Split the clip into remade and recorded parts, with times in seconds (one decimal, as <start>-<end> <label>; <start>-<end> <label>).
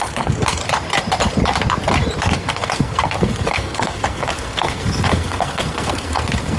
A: 0.0-0.6 remade; 0.6-2.2 recorded; 2.2-6.6 remade